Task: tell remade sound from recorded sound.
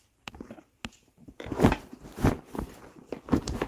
remade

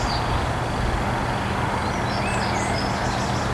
recorded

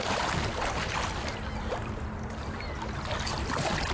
recorded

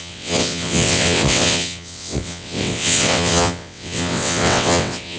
remade